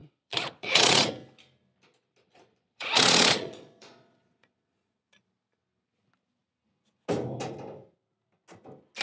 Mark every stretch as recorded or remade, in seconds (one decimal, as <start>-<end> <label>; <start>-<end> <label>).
0.0-1.1 remade; 1.1-2.2 recorded; 2.2-5.2 remade; 5.2-9.0 recorded